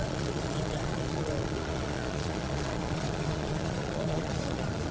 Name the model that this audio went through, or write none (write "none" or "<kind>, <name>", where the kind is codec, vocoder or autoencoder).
vocoder, Vocos